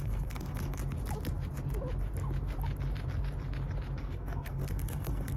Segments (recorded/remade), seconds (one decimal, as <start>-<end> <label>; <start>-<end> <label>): 0.0-0.8 remade; 0.8-4.0 recorded; 4.0-5.4 remade